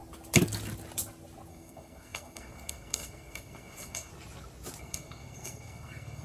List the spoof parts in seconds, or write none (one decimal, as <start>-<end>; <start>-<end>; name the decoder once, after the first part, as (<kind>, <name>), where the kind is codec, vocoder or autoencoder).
1.5-4.1 (codec, SNAC); 4.8-6.2

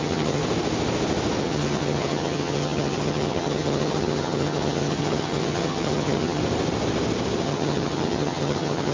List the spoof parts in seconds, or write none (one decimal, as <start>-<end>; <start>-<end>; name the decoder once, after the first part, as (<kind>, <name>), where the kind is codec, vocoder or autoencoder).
0.0-0.4 (vocoder, HiFi-GAN); 1.4-6.4; 7.4-8.9

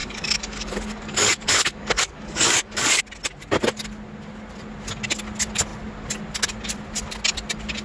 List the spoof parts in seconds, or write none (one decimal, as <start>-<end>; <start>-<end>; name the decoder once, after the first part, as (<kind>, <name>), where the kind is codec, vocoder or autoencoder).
0.0-3.0 (codec, DAC)

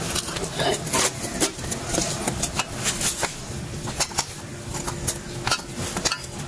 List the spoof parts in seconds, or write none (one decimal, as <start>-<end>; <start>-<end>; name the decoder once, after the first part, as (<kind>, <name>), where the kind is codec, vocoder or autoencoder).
none